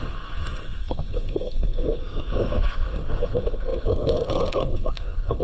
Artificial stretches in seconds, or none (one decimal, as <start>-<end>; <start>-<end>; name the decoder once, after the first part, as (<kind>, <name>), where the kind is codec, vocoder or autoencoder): 0.0-5.4 (codec, SNAC)